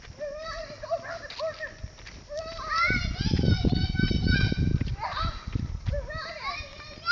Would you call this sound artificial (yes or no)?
no